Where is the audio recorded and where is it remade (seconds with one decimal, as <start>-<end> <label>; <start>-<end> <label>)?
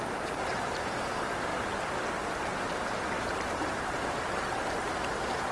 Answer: 0.0-5.5 recorded